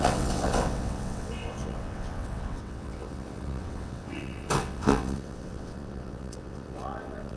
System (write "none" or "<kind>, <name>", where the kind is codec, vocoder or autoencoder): vocoder, WaveNeXt